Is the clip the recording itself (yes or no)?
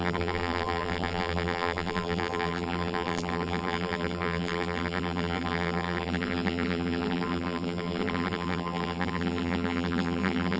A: no